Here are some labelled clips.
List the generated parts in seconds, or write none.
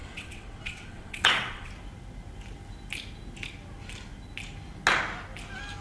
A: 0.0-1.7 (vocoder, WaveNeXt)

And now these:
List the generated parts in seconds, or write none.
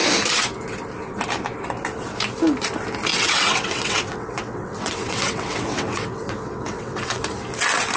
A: 3.1-7.2 (vocoder, WaveNeXt)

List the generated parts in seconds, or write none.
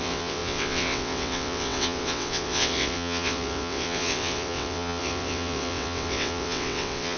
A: 0.0-7.2 (vocoder, WaveNeXt)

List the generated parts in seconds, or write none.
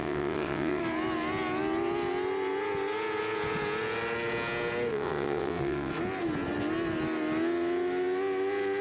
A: 0.0-0.8 (vocoder, WaveNeXt); 4.9-5.9